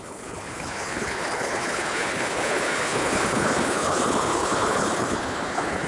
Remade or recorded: remade